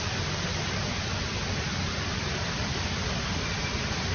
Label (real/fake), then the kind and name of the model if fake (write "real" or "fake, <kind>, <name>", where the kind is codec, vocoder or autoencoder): real